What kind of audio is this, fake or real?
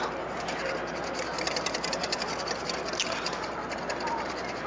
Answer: real